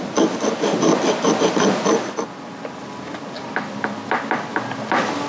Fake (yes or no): no